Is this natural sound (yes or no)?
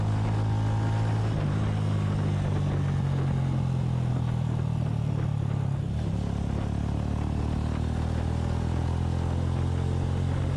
yes